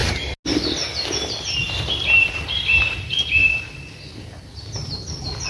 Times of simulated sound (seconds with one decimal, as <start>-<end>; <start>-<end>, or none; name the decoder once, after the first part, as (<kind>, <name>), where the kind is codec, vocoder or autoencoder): none